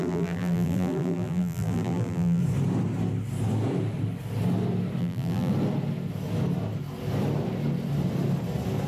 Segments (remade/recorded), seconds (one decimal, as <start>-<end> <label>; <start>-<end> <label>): 0.0-2.4 remade; 2.4-5.0 recorded; 5.0-5.5 remade; 5.5-8.9 recorded